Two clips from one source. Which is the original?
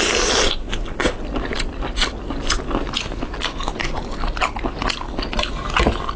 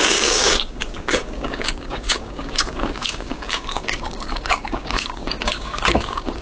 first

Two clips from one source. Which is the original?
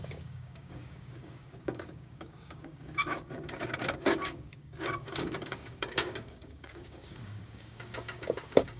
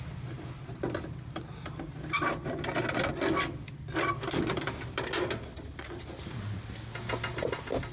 second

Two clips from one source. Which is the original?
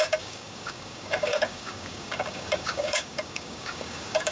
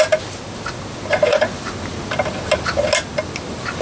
second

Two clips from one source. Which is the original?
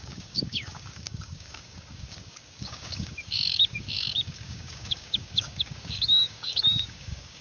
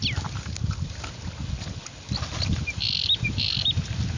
second